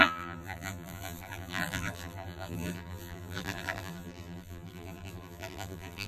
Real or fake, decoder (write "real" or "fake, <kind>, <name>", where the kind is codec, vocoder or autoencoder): fake, vocoder, BigVGAN v2